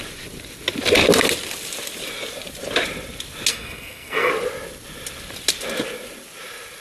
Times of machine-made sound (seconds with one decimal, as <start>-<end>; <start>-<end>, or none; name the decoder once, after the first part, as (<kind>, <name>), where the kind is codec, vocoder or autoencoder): 3.5-4.3 (codec, SNAC)